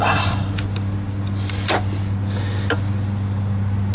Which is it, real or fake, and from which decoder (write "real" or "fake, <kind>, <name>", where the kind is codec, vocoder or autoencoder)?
real